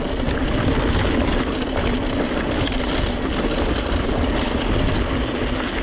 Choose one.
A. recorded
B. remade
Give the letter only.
A